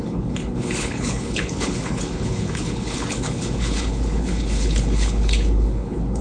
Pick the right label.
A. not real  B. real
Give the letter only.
A